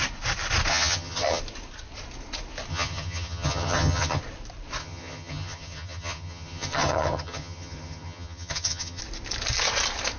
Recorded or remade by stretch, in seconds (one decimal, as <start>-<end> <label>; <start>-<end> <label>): 0.0-0.7 recorded; 0.7-1.4 remade; 1.4-2.7 recorded; 2.7-4.2 remade; 4.2-4.8 recorded; 4.8-9.0 remade; 9.0-10.2 recorded

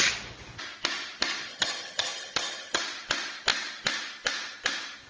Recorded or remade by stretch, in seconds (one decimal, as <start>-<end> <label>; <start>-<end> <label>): 0.0-1.5 recorded; 1.5-2.8 remade; 2.8-5.1 recorded

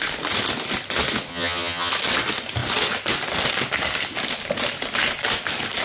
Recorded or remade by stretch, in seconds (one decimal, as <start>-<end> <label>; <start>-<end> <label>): 0.0-1.3 recorded; 1.3-1.9 remade; 1.9-5.8 recorded

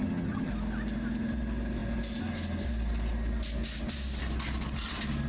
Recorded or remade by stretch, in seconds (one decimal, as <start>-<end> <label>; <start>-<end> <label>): 0.0-0.5 remade; 0.5-5.3 recorded

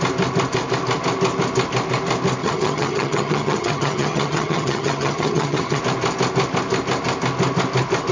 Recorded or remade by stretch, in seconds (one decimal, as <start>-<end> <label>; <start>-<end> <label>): 0.0-2.4 recorded; 2.4-5.8 remade; 5.8-8.1 recorded

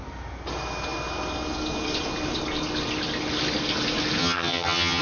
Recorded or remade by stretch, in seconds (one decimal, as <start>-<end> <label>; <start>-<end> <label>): 0.0-4.2 recorded; 4.2-5.0 remade